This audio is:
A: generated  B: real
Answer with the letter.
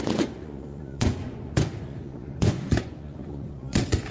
A